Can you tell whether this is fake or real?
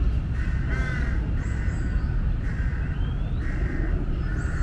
real